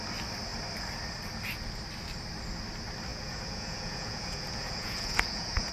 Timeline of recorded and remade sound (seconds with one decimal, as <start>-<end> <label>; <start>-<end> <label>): 0.0-3.1 recorded; 3.1-5.7 remade